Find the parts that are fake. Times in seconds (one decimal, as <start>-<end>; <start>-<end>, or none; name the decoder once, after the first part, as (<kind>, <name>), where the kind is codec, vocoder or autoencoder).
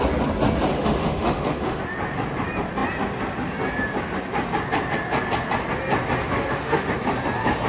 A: 0.7-1.8 (autoencoder, DAC-VAE); 6.2-6.9